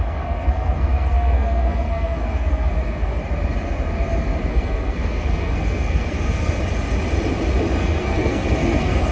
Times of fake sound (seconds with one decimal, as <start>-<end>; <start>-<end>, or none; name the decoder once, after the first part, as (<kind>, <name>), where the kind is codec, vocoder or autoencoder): 0.0-3.2 (codec, SNAC); 4.5-6.6; 7.8-9.1